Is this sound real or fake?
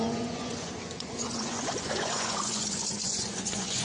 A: fake